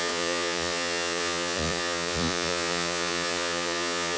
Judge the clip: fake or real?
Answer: fake